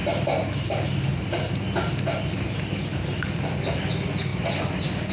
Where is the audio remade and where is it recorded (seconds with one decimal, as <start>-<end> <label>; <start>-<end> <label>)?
0.0-4.3 recorded; 4.3-5.1 remade